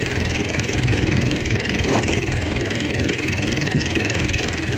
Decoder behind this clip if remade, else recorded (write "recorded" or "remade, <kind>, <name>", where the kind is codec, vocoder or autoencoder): remade, codec, DAC